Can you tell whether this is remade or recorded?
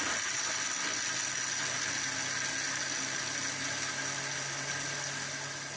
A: recorded